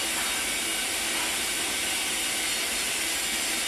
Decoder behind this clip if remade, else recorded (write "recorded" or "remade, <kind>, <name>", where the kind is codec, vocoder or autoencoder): recorded